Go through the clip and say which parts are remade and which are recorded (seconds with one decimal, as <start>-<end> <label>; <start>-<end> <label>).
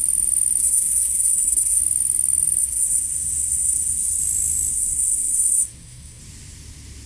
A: 0.0-0.6 recorded; 0.6-1.8 remade; 1.8-2.6 recorded; 2.6-4.2 remade; 4.2-4.7 recorded; 4.7-6.2 remade; 6.2-7.1 recorded